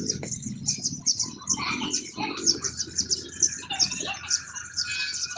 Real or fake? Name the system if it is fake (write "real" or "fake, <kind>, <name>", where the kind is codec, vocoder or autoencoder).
real